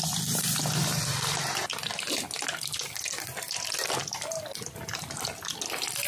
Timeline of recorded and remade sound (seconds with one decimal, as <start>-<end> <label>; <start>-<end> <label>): 0.0-6.1 recorded

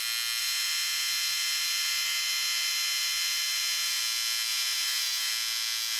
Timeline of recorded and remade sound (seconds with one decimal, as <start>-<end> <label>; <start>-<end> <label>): 0.0-0.4 recorded; 0.4-4.0 remade; 4.0-4.5 recorded; 4.5-5.3 remade; 5.3-6.0 recorded

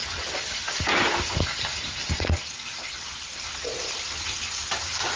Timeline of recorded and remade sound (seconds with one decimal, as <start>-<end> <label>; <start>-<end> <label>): 0.0-5.2 recorded

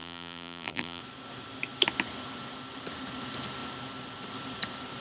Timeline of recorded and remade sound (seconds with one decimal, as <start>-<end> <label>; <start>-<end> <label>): 0.0-1.0 remade; 1.0-5.0 recorded

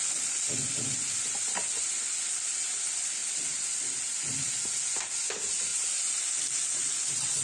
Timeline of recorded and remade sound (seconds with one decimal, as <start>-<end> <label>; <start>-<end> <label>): 0.0-7.4 recorded